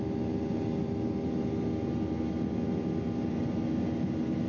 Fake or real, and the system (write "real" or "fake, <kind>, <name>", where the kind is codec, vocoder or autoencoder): real